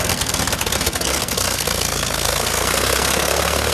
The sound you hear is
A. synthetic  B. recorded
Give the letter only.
A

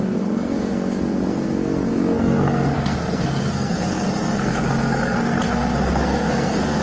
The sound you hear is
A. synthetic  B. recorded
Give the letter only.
A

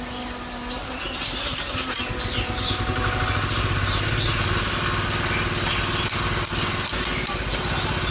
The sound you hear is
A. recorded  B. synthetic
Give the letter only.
A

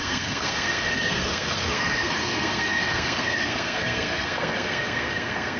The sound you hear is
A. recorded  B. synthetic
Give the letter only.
B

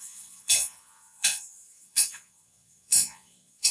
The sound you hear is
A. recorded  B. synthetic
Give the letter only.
B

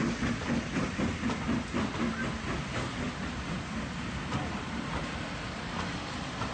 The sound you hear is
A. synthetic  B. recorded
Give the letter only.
B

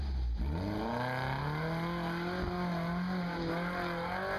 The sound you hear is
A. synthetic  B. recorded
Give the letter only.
B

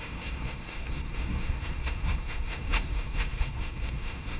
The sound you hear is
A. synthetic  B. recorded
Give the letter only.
A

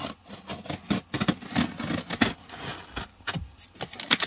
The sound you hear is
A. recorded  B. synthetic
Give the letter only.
A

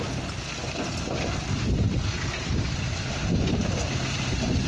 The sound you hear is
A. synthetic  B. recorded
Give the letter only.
B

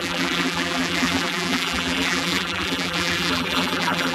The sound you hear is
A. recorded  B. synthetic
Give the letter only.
B